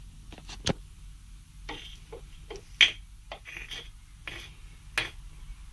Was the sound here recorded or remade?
recorded